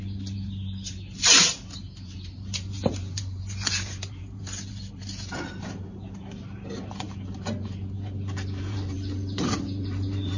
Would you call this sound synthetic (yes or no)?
yes